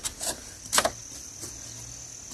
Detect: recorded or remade recorded